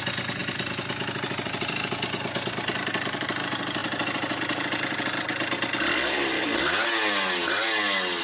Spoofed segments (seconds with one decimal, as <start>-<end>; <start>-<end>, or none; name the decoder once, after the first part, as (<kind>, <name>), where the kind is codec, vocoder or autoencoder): 0.4-2.1 (vocoder, BigVGAN v2)